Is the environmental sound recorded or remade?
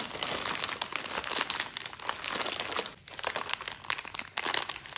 recorded